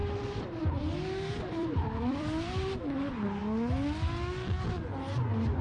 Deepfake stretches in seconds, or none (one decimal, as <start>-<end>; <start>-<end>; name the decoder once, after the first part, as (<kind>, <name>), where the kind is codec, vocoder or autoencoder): 1.6-2.5 (vocoder, BigVGAN v2)